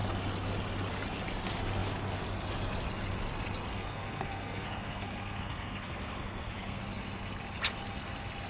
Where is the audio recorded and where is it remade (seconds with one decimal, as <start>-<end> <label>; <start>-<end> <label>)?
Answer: 0.0-3.7 recorded; 3.7-6.8 remade; 6.8-8.5 recorded

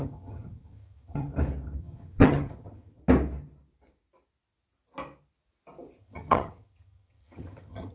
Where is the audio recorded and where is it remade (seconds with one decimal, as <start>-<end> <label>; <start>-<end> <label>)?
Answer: 0.0-1.3 remade; 1.3-1.8 recorded; 1.8-3.0 remade; 3.0-6.0 recorded; 6.0-7.9 remade